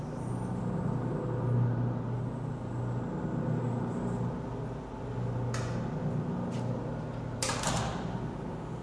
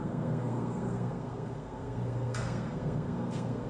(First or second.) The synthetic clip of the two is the second